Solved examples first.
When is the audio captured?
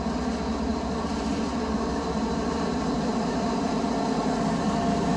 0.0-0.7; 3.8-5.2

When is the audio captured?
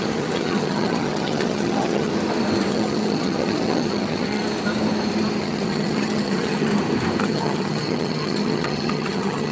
2.1-2.7; 4.4-5.4; 6.7-7.2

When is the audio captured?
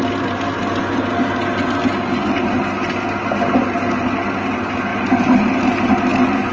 0.0-4.9; 5.9-6.5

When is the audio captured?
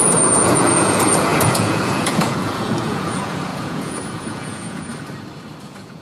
4.9-5.6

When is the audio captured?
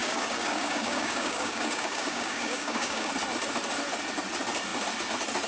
3.1-5.5